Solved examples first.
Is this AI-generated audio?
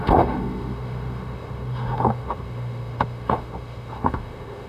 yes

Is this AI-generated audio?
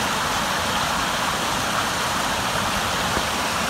no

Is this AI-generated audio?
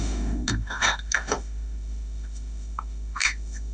yes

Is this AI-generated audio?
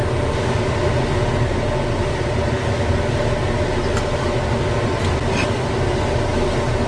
no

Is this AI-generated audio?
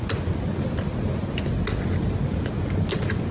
no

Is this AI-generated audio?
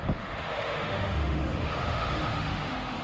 yes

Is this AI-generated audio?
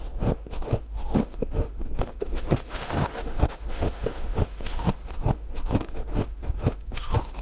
yes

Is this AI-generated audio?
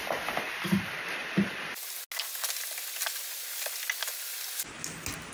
no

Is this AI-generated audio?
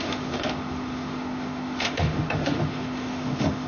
yes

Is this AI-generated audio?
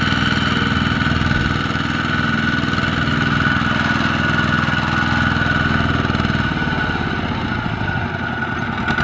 no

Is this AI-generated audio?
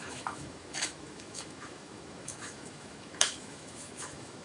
yes